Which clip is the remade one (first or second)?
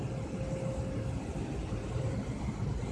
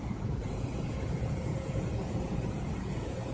second